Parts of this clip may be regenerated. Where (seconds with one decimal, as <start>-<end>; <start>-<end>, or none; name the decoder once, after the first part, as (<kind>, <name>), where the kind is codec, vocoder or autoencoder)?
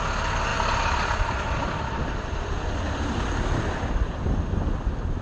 none